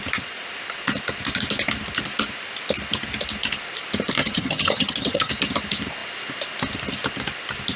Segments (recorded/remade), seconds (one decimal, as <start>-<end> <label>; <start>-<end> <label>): 0.0-4.2 recorded; 4.2-5.3 remade; 5.3-7.8 recorded